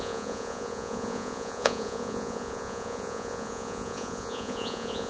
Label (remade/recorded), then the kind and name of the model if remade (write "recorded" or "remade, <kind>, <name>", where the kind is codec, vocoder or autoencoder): remade, vocoder, Vocos